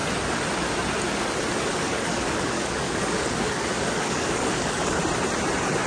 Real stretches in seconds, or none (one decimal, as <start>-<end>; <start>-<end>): 0.0-1.7; 5.0-5.9